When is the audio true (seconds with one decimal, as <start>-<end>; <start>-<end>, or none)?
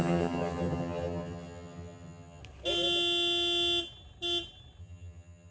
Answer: 2.4-4.8